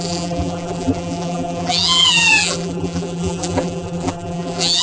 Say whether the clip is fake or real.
fake